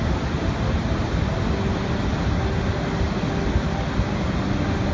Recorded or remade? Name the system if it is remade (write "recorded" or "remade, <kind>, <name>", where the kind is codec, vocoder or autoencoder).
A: recorded